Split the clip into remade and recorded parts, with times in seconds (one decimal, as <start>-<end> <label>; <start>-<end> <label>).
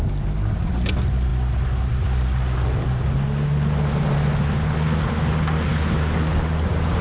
0.0-7.0 recorded